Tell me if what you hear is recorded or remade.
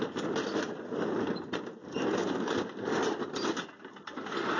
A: remade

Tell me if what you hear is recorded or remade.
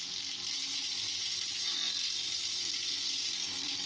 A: remade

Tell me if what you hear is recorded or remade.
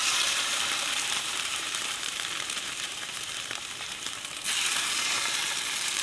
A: remade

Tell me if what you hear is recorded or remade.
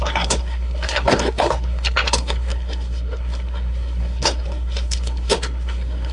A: remade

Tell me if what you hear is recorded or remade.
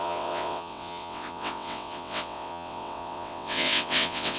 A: remade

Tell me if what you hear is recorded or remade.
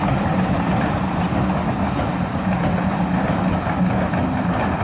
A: recorded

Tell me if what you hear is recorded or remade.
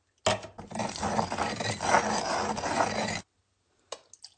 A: recorded